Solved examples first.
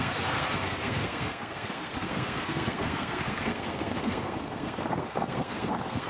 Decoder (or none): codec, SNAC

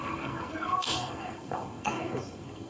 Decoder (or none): codec, SNAC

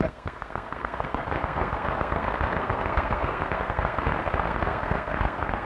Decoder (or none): codec, SNAC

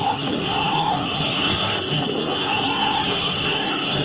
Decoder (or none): codec, SNAC